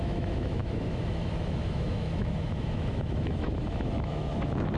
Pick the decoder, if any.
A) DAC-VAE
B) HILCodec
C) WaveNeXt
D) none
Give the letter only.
A